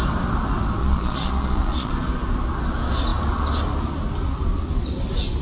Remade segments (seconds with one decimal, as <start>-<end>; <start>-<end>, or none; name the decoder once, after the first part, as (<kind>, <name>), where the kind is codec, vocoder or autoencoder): 0.8-1.9 (vocoder, Vocos)